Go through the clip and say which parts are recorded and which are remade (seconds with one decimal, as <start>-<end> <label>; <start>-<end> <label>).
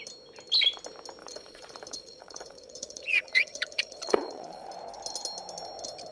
0.0-1.2 recorded; 1.2-4.7 remade; 4.7-6.1 recorded